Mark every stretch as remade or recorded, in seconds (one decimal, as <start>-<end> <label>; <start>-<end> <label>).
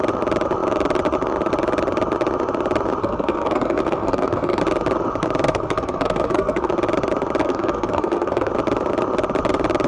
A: 0.0-3.0 recorded; 3.0-4.6 remade; 4.6-5.5 recorded; 5.5-6.7 remade; 6.7-7.4 recorded; 7.4-8.5 remade; 8.5-9.9 recorded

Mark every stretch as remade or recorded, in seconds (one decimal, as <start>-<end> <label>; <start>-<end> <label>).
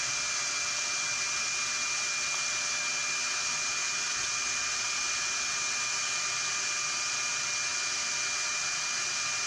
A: 0.0-9.5 recorded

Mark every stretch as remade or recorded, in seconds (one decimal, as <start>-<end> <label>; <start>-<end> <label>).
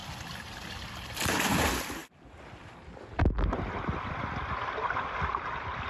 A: 0.0-5.9 recorded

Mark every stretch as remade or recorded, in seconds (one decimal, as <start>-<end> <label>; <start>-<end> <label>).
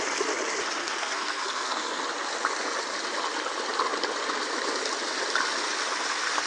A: 0.0-0.8 recorded; 0.8-2.0 remade; 2.0-6.5 recorded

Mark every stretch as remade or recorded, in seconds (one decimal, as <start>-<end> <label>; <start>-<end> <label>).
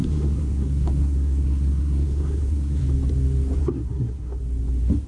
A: 0.0-2.8 remade; 2.8-3.6 recorded; 3.6-4.4 remade; 4.4-5.1 recorded